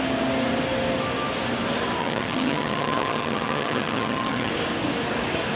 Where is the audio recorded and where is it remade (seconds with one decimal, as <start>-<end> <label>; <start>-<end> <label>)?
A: 0.0-2.0 recorded; 2.0-4.5 remade; 4.5-5.6 recorded